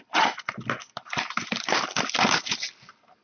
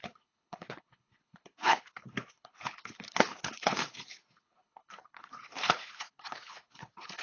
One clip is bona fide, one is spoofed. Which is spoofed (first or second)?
second